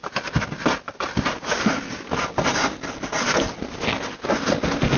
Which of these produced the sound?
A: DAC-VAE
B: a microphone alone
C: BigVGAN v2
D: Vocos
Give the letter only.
B